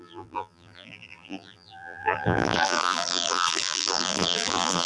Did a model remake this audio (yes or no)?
yes